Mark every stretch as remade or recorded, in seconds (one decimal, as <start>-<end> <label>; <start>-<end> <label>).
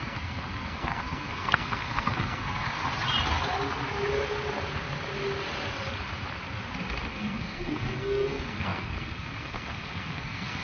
0.0-2.8 remade; 2.8-7.1 recorded; 7.1-10.6 remade